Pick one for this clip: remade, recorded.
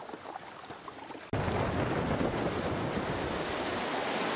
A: recorded